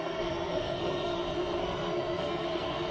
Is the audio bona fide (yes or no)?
no